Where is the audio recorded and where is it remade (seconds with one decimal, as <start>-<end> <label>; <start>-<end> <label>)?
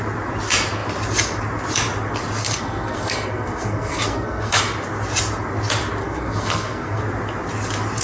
0.0-2.4 recorded; 2.4-4.6 remade; 4.6-6.0 recorded; 6.0-7.0 remade; 7.0-8.0 recorded